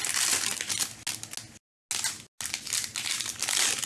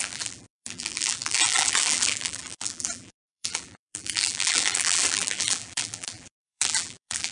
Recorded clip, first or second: first